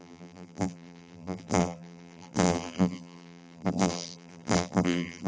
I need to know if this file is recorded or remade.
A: remade